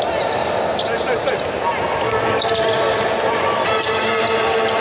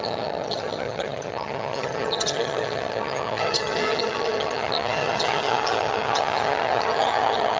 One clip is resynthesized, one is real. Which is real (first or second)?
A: first